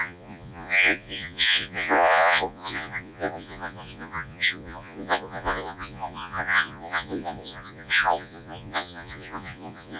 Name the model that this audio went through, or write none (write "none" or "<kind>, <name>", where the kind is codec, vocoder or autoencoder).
vocoder, Vocos